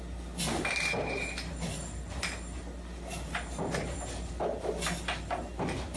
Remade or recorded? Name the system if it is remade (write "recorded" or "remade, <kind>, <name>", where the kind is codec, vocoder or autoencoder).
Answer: recorded